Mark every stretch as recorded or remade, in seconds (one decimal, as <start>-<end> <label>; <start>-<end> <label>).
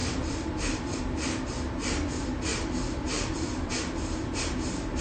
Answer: 0.0-1.0 remade; 1.0-2.5 recorded; 2.5-3.7 remade; 3.7-5.0 recorded